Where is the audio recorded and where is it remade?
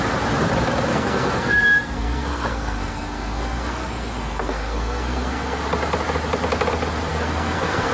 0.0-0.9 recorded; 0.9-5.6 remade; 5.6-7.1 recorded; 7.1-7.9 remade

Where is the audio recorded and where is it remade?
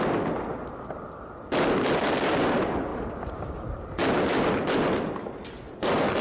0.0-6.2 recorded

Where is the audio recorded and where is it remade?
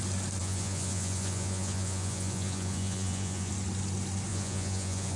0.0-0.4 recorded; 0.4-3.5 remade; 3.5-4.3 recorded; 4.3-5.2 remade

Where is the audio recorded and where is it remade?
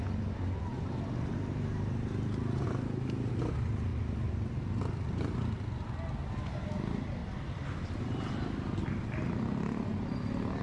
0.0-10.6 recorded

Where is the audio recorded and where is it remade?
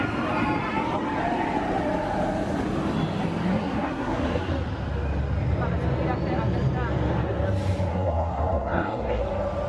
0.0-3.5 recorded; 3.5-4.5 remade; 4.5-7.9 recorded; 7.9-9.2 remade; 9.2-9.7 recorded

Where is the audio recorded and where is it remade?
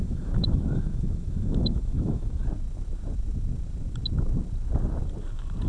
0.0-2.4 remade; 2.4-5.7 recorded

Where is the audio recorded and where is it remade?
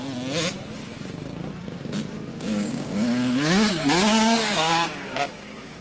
0.0-0.8 recorded; 0.8-1.4 remade; 1.4-2.3 recorded; 2.3-5.8 remade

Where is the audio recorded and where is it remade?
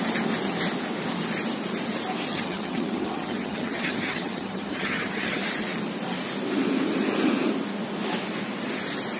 0.0-2.3 recorded; 2.3-5.4 remade; 5.4-9.2 recorded